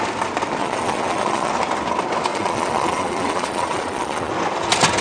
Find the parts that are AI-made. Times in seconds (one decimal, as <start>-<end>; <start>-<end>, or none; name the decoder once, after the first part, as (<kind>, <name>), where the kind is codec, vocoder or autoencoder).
0.6-1.5 (vocoder, Vocos); 2.3-4.3